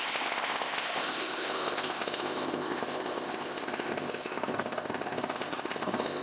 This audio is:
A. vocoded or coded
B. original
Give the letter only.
A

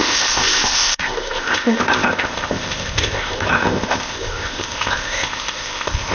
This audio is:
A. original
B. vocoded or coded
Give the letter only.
B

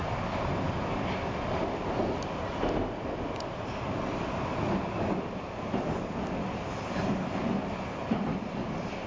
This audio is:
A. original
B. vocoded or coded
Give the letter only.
A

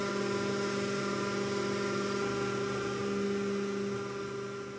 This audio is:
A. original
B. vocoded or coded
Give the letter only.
A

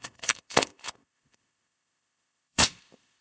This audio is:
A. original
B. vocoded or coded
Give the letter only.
B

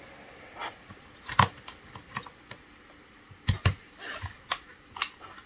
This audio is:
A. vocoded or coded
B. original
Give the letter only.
B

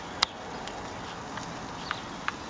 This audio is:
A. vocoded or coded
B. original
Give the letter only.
B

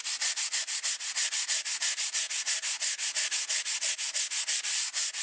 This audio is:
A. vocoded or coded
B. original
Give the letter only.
B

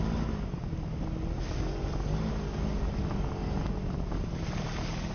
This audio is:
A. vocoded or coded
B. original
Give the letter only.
B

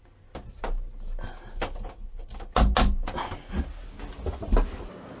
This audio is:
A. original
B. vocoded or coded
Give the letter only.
A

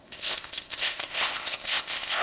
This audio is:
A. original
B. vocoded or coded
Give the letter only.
B